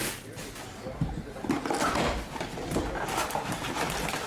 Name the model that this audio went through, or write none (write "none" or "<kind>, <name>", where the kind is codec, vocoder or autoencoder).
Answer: vocoder, BigVGAN v2